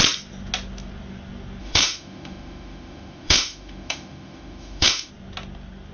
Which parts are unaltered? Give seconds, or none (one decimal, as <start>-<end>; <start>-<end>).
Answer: 0.0-1.6; 5.1-5.9